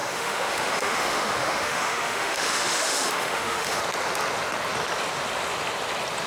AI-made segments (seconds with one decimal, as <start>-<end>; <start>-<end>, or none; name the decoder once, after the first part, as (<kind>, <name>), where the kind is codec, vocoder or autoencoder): 0.0-3.8 (autoencoder, DAC-VAE)